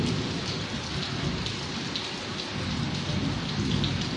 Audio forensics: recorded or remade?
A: recorded